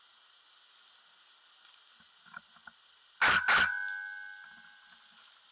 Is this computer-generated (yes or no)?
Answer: no